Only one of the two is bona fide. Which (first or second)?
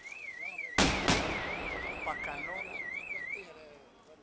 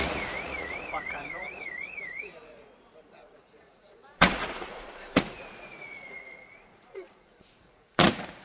first